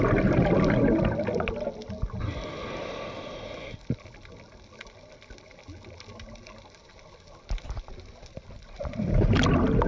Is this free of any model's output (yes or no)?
yes